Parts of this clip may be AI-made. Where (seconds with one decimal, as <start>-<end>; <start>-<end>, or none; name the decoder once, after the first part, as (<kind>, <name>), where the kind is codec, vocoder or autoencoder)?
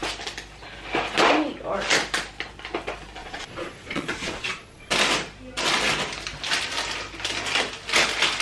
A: 3.2-4.9 (vocoder, Vocos)